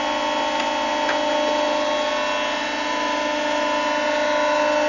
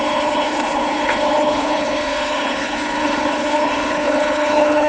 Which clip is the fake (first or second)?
second